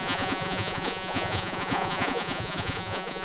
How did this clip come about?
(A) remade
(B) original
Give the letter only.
A